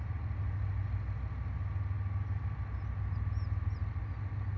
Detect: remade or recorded recorded